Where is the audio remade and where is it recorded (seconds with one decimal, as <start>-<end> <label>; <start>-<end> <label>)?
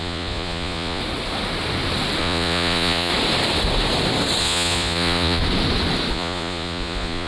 0.0-1.0 remade; 1.0-2.2 recorded; 2.2-3.1 remade; 3.1-4.4 recorded; 4.4-5.4 remade; 5.4-6.1 recorded; 6.1-7.3 remade